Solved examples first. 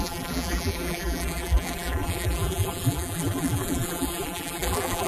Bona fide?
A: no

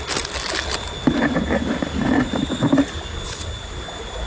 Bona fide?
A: yes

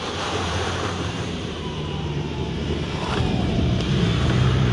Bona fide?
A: no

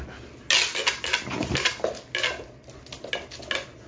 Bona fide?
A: yes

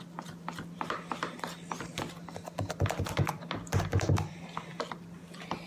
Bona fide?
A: yes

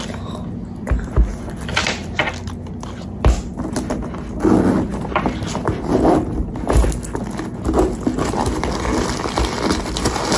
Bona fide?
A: yes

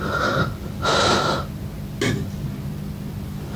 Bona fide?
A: yes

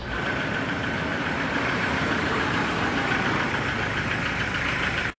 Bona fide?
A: no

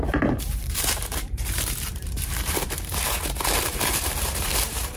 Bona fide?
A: no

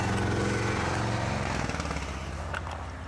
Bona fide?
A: yes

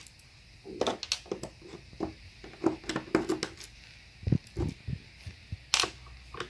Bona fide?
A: yes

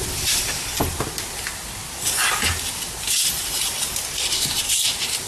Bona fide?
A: yes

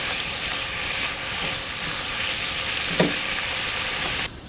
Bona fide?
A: no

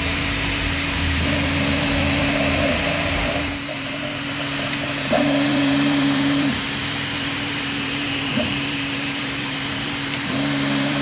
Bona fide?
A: no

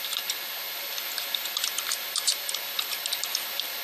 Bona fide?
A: no